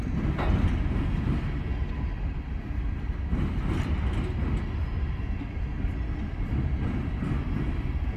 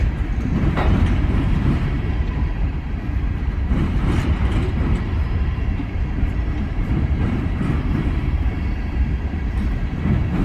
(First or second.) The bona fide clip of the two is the first